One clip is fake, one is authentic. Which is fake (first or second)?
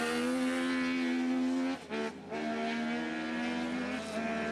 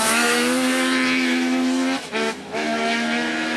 second